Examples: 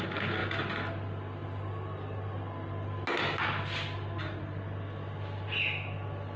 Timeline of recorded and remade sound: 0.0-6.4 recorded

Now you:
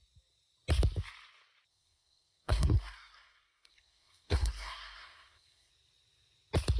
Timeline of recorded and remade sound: 0.0-1.7 recorded; 1.7-5.7 remade; 5.7-6.8 recorded

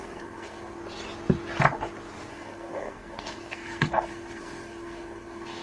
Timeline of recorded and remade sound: 0.0-0.8 remade; 0.8-2.3 recorded; 2.3-5.6 remade

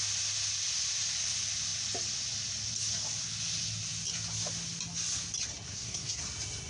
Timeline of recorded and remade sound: 0.0-5.7 recorded; 5.7-6.2 remade; 6.2-6.7 recorded